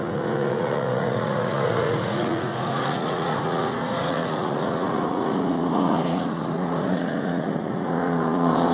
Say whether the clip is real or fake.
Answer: fake